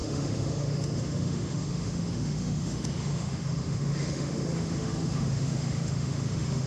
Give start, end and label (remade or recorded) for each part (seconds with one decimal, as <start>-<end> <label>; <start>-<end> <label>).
0.0-6.7 remade